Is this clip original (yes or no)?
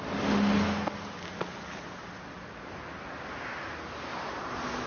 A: yes